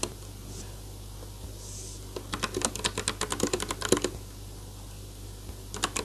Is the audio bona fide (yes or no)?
yes